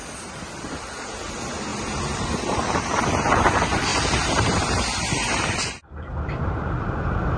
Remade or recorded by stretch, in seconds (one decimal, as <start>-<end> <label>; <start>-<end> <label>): 0.0-1.7 recorded; 1.7-3.0 remade; 3.0-3.9 recorded; 3.9-6.8 remade; 6.8-7.4 recorded